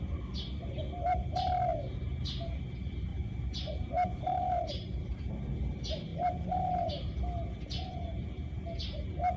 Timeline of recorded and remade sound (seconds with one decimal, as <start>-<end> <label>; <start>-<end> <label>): 0.0-1.7 recorded; 1.7-2.6 remade; 2.6-3.1 recorded; 3.1-5.3 remade; 5.3-6.1 recorded; 6.1-7.2 remade; 7.2-9.4 recorded